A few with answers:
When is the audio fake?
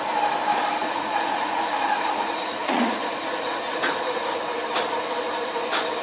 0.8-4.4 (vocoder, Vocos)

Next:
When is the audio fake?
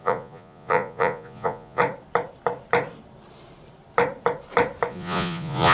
0.0-1.8 (vocoder, Vocos); 4.9-5.7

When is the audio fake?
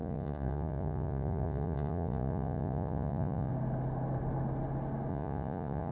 0.0-3.5 (vocoder, Vocos); 5.1-5.9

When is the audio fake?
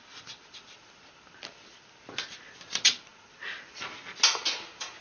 none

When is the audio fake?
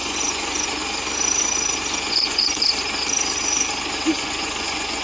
0.0-0.8 (vocoder, Vocos); 2.1-2.5; 4.2-5.0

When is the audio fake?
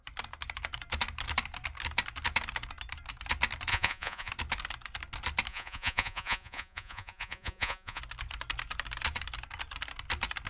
3.7-4.3 (vocoder, Vocos); 5.5-8.0